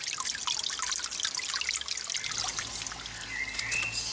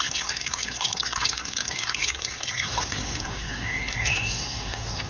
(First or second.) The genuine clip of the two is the first